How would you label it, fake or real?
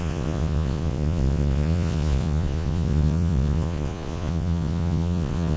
fake